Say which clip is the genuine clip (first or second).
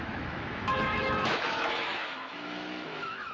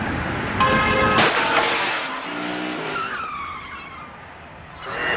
second